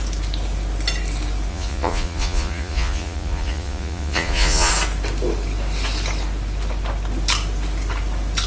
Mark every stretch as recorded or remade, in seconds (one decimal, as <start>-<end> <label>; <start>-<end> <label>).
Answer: 0.0-1.5 recorded; 1.5-4.7 remade; 4.7-8.5 recorded